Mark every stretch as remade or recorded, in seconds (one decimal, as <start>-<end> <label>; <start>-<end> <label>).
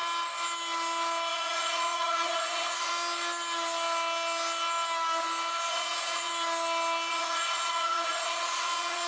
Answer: 0.0-1.3 recorded; 1.3-2.9 remade; 2.9-5.7 recorded; 5.7-6.3 remade; 6.3-7.1 recorded; 7.1-9.1 remade